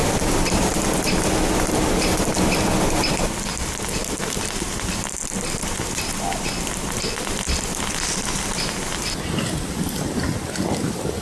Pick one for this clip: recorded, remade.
recorded